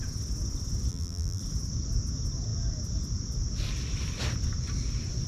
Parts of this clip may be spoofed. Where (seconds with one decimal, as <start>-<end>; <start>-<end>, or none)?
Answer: 0.9-1.4